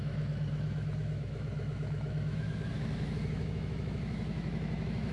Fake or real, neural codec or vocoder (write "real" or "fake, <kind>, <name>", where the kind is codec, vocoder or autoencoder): fake, autoencoder, DAC-VAE